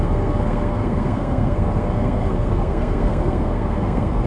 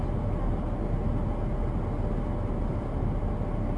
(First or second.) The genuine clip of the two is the second